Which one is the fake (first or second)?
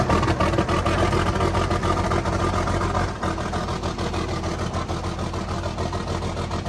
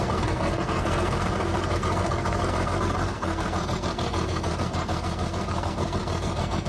second